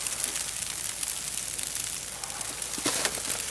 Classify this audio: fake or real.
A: real